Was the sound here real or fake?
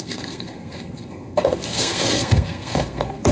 fake